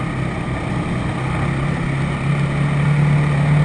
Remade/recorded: recorded